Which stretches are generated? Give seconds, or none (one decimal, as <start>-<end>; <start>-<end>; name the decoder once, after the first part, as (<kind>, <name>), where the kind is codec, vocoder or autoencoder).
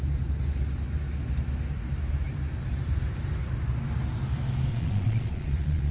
4.7-5.9 (vocoder, Vocos)